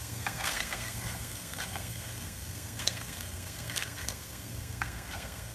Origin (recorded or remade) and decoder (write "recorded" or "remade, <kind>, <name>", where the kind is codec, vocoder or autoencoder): remade, codec, SNAC